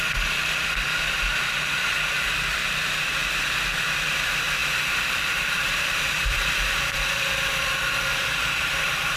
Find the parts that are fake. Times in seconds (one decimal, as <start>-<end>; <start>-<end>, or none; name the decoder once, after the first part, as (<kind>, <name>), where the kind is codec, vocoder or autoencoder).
0.0-3.2 (vocoder, BigVGAN v2); 3.8-4.6; 5.1-9.2